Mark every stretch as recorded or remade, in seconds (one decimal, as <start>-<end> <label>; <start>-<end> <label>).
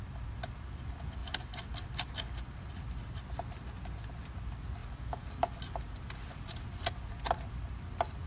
0.0-8.3 recorded